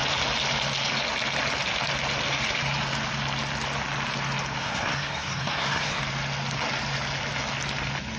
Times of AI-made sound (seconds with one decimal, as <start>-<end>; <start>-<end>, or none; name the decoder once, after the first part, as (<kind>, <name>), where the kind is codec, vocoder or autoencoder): 4.6-6.0 (codec, SNAC)

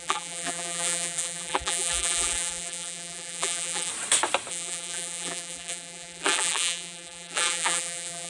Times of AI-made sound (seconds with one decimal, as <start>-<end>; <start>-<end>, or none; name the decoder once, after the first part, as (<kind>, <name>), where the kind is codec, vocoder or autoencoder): 0.0-3.9 (vocoder, BigVGAN v2); 4.5-8.3

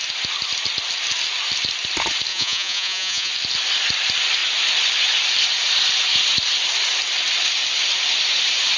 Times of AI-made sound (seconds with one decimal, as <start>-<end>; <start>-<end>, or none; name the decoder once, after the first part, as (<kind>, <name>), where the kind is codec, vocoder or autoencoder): 2.3-3.3 (vocoder, Vocos)

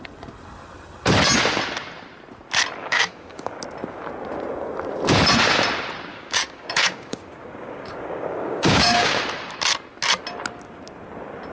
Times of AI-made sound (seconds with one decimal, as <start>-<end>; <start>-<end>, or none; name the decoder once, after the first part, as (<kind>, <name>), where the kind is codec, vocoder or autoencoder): 2.8-3.6 (codec, DAC); 6.1-9.2

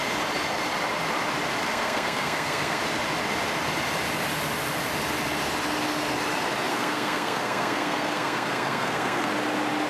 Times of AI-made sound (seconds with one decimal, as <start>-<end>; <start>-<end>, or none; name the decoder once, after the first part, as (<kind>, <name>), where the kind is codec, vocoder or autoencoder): 1.6-2.8 (codec, SNAC); 6.7-9.3

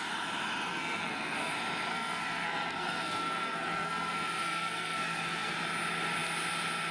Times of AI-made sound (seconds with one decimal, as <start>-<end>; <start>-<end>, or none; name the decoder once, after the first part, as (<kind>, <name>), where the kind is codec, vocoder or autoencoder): 0.7-1.5 (codec, SNAC); 1.9-5.5